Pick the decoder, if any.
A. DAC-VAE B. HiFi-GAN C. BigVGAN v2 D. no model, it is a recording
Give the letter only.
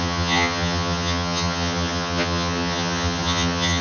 B